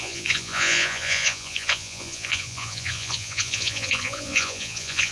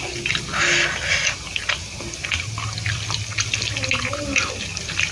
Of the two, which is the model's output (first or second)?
first